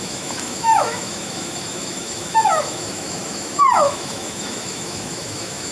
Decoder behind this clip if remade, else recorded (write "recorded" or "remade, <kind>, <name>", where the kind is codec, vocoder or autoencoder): remade, autoencoder, DAC-VAE